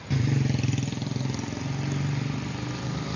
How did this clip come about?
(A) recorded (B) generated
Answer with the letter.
A